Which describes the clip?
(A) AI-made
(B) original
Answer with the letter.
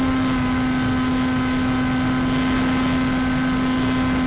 B